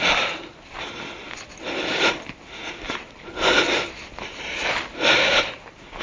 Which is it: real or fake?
real